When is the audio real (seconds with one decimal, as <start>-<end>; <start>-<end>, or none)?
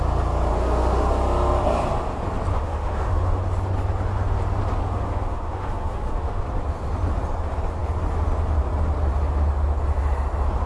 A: 0.0-0.5; 1.1-2.5; 3.4-4.8; 6.4-10.7